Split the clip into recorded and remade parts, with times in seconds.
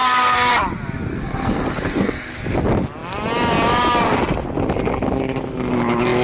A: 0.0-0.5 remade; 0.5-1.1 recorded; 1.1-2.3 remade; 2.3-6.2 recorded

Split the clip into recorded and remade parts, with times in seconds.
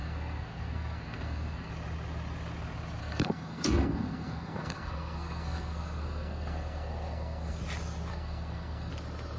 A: 0.0-1.7 remade; 1.7-3.0 recorded; 3.0-7.6 remade; 7.6-8.1 recorded; 8.1-8.9 remade; 8.9-9.4 recorded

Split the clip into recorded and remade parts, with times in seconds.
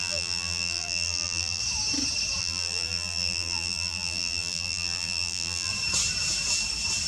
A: 0.0-1.6 remade; 1.6-2.4 recorded; 2.4-5.7 remade; 5.7-7.1 recorded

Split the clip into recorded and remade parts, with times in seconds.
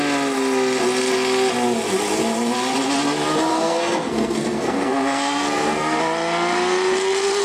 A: 0.0-3.5 recorded; 3.5-6.0 remade; 6.0-7.4 recorded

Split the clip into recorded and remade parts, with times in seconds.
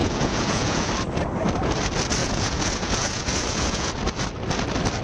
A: 0.0-0.9 remade; 0.9-2.2 recorded; 2.2-3.9 remade; 3.9-5.0 recorded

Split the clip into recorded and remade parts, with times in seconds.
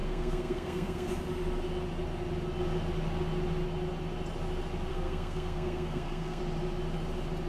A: 0.0-1.1 remade; 1.1-4.9 recorded; 4.9-6.4 remade; 6.4-7.5 recorded